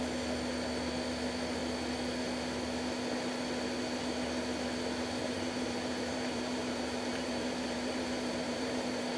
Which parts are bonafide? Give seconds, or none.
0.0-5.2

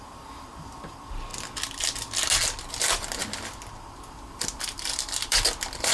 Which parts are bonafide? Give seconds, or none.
1.3-2.7; 3.2-3.8

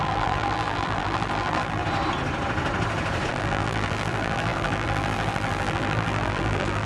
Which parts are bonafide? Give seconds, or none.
1.8-3.3

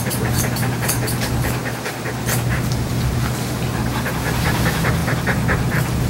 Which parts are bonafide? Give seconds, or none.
none

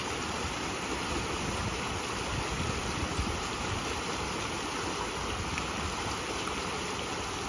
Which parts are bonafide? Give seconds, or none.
0.0-7.5